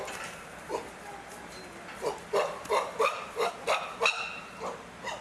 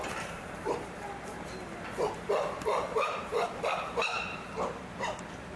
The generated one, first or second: second